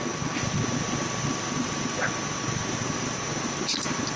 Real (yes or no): yes